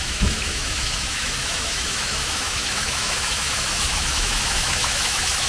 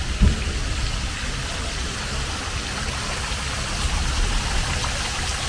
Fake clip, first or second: first